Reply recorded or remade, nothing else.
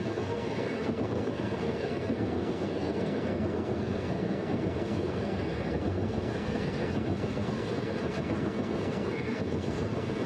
remade